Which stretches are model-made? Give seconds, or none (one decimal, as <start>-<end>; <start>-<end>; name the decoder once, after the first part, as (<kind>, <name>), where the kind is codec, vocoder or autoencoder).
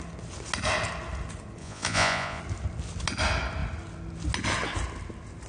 1.6-2.4 (vocoder, Vocos)